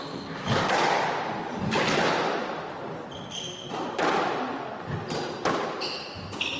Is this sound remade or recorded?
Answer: recorded